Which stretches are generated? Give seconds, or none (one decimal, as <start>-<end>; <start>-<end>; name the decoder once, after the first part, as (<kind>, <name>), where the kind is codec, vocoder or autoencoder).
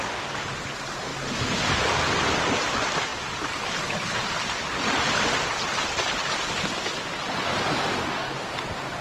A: 8.0-8.5 (codec, DAC)